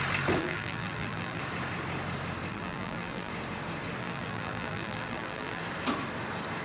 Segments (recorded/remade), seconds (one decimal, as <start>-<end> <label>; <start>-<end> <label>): 0.0-0.4 recorded; 0.4-1.4 remade; 1.4-2.5 recorded; 2.5-3.3 remade; 3.3-4.0 recorded; 4.0-5.6 remade; 5.6-6.6 recorded